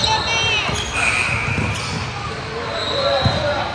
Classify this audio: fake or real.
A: real